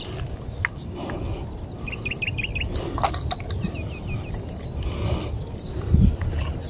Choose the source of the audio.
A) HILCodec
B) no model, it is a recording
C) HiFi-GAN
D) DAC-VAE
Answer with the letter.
B